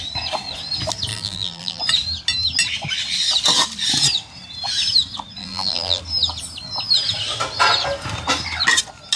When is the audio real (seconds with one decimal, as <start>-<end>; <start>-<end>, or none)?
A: 0.0-1.1; 1.8-5.4; 6.0-9.2